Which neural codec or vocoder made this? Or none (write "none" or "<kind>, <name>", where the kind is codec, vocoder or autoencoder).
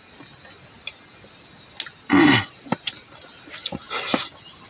none